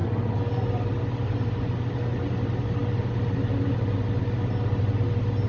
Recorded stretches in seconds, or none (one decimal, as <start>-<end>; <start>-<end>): 0.0-5.5